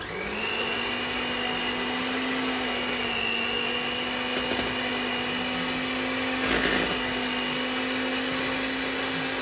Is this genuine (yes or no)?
yes